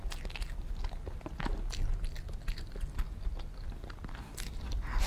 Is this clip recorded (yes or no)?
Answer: yes